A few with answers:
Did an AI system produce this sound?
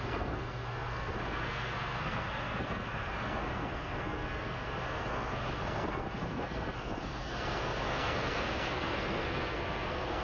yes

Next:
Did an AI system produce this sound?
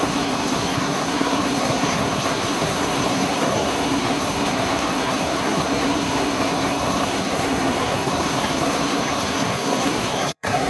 yes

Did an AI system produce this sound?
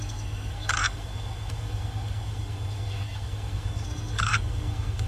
yes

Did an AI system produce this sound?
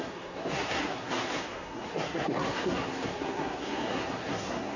yes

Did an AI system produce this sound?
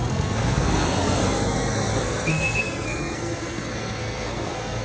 yes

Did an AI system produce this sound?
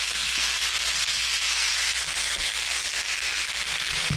yes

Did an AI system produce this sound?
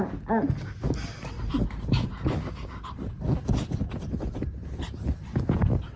no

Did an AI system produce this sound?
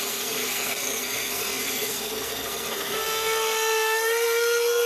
yes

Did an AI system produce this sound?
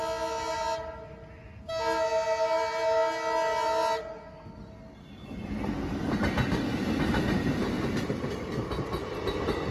no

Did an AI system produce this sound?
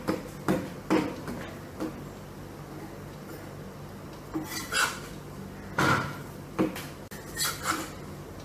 no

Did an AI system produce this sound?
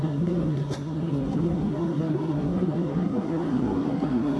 yes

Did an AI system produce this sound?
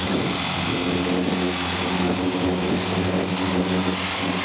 no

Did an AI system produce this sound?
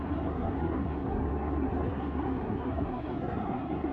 yes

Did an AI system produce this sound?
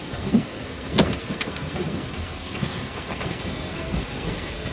yes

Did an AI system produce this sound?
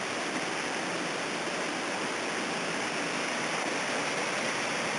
no